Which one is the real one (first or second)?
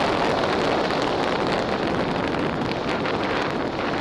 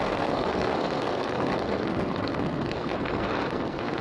first